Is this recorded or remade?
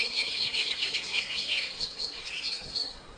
remade